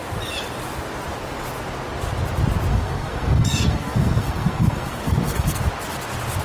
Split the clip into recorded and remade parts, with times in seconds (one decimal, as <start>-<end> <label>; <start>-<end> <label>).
0.0-2.7 recorded; 2.7-5.6 remade; 5.6-6.4 recorded